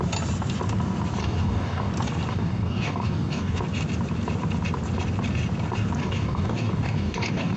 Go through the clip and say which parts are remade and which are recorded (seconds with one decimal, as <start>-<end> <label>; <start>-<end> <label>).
0.0-1.2 recorded; 1.2-1.9 remade; 1.9-2.3 recorded; 2.3-3.6 remade; 3.6-6.0 recorded; 6.0-7.6 remade